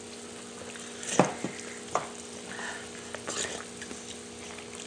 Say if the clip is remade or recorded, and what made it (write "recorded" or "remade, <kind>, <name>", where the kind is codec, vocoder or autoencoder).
recorded